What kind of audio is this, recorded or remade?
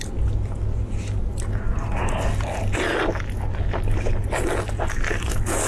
recorded